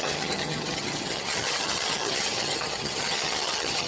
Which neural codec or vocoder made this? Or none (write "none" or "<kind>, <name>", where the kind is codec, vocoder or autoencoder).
vocoder, HiFi-GAN